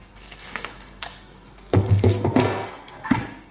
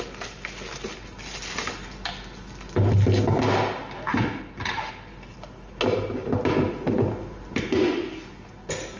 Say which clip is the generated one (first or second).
first